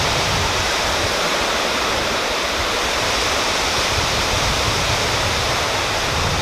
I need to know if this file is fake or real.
fake